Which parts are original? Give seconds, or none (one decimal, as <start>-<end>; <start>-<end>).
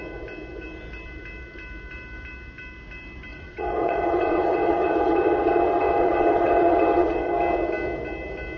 0.0-3.3; 7.3-8.6